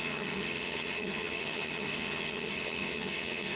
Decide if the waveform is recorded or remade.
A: remade